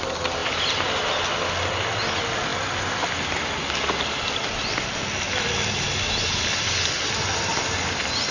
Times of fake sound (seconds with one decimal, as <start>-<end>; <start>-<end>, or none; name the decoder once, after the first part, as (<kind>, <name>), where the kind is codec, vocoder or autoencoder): none